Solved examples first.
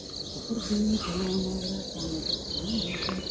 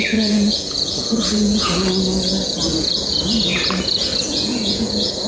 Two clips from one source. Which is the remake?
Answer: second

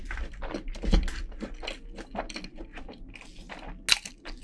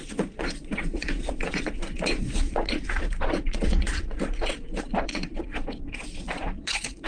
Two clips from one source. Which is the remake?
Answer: second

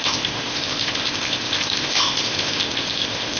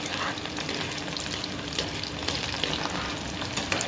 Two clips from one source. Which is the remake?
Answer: first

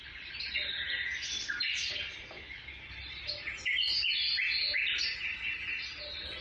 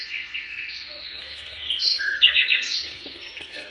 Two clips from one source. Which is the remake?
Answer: second